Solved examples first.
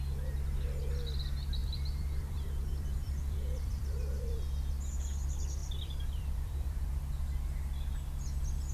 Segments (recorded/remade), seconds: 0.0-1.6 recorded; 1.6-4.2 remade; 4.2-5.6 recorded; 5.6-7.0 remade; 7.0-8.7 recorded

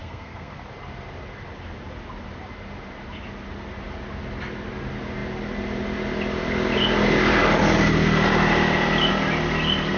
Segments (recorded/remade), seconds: 0.0-0.6 remade; 0.6-10.0 recorded

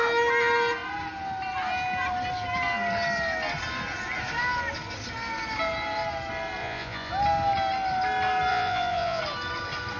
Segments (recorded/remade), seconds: 0.0-6.6 recorded; 6.6-7.1 remade; 7.1-8.5 recorded; 8.5-9.2 remade; 9.2-10.0 recorded

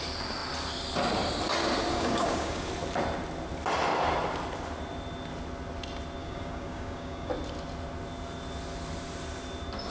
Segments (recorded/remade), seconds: 0.0-1.9 recorded; 1.9-2.7 remade; 2.7-6.2 recorded; 6.2-7.3 remade; 7.3-9.9 recorded

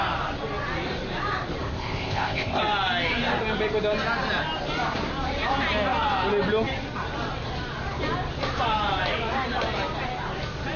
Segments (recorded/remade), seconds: 0.0-1.6 recorded; 1.6-2.6 remade; 2.6-10.8 recorded

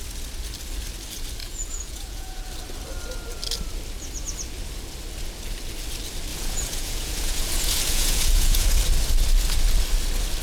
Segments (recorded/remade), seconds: 0.0-1.4 recorded; 1.4-2.5 remade; 2.5-6.3 recorded; 6.3-8.8 remade; 8.8-10.4 recorded

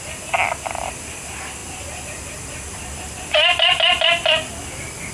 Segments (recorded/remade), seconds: 0.0-5.1 recorded